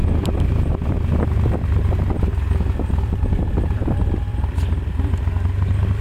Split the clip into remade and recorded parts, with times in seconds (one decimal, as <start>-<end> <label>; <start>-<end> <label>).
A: 0.0-3.6 remade; 3.6-4.3 recorded; 4.3-4.9 remade; 4.9-6.0 recorded